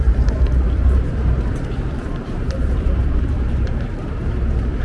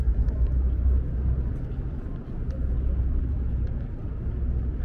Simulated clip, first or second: first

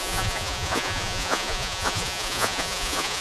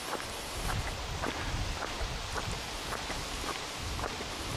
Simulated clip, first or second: first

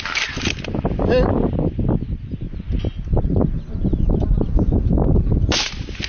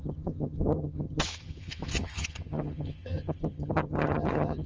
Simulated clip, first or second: second